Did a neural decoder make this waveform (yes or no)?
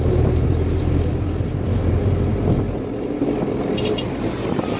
no